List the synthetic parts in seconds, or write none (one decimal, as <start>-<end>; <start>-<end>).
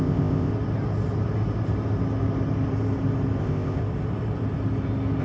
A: 0.0-0.5; 3.4-3.8